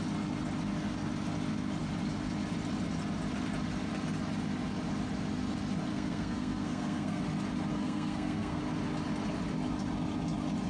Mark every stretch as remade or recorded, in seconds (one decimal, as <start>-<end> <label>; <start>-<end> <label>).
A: 0.0-5.9 recorded; 5.9-7.2 remade; 7.2-7.7 recorded; 7.7-8.6 remade; 8.6-10.7 recorded

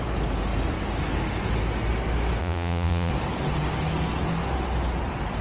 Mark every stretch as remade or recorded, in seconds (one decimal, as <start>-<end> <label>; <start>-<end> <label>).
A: 0.0-2.4 recorded; 2.4-3.1 remade; 3.1-5.4 recorded

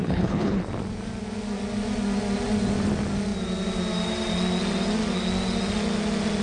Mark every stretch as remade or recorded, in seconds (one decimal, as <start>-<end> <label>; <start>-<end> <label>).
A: 0.0-0.6 remade; 0.6-6.4 recorded

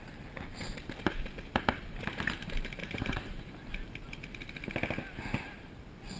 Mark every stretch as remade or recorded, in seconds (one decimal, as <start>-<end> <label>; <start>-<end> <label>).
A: 0.0-2.8 recorded; 2.8-3.5 remade; 3.5-6.2 recorded

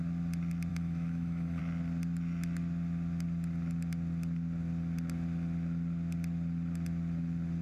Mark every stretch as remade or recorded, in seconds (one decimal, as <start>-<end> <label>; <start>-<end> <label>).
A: 0.0-0.7 recorded; 0.7-1.6 remade; 1.6-7.6 recorded

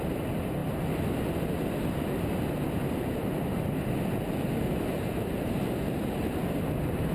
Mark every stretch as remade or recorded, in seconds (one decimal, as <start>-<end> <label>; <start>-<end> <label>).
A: 0.0-0.6 remade; 0.6-4.9 recorded; 4.9-7.1 remade